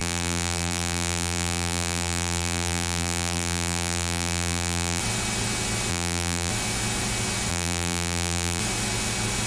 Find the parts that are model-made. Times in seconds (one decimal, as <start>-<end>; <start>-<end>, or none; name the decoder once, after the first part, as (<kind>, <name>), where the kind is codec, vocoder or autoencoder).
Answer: 0.0-5.0 (vocoder, BigVGAN v2); 5.9-6.5; 7.5-8.6